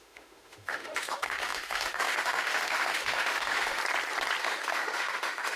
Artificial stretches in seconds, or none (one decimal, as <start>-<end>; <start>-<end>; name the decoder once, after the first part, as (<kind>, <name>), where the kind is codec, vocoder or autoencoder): 0.0-3.8 (autoencoder, DAC-VAE); 4.4-5.6